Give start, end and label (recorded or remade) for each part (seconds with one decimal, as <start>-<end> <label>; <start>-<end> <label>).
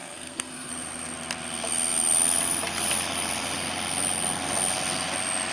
0.0-0.7 remade; 0.7-5.5 recorded